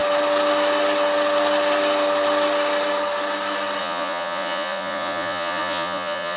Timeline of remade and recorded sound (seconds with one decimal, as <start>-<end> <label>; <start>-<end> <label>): 0.0-3.8 recorded; 3.8-6.4 remade